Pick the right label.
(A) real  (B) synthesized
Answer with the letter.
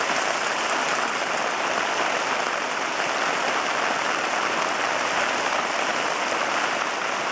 A